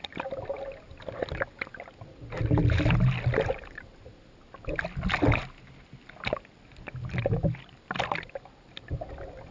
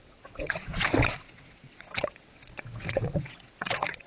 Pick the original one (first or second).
first